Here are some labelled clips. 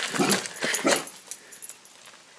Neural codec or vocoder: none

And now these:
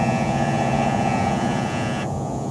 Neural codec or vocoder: vocoder, Vocos